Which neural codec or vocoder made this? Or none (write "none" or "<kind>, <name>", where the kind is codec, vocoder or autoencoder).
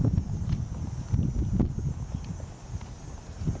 none